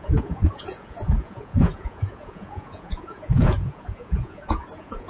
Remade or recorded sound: remade